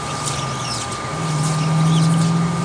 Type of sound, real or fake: real